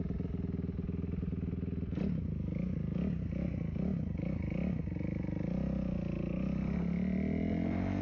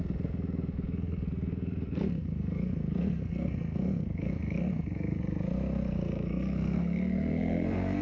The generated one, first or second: second